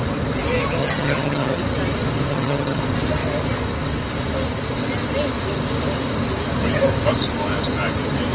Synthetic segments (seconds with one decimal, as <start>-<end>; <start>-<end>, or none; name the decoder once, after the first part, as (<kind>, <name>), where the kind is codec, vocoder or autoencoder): 0.8-1.6 (vocoder, HiFi-GAN); 2.3-2.8